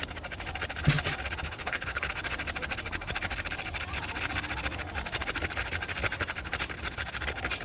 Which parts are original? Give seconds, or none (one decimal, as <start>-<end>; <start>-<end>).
0.0-1.4; 2.1-7.6